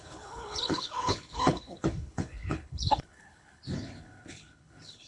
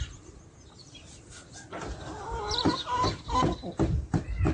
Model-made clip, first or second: first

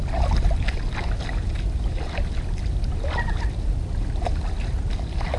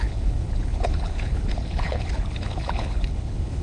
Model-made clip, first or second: second